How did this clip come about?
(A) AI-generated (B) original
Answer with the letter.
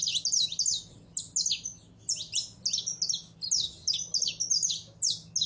B